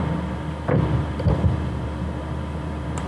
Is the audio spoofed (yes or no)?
yes